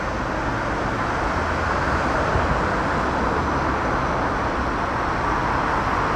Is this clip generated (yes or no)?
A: no